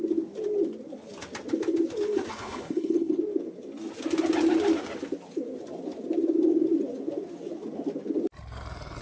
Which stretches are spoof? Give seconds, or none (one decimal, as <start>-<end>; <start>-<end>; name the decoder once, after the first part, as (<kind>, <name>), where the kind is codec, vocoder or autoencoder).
2.3-3.2 (codec, HILCodec)